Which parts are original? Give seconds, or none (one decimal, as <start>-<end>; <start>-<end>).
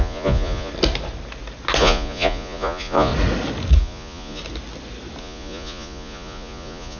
0.7-1.8; 3.1-3.8; 4.4-5.2